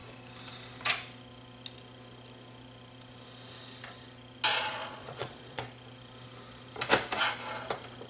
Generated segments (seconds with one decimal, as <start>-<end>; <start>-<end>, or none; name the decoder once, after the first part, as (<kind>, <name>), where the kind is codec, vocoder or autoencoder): 4.5-5.6 (vocoder, Vocos)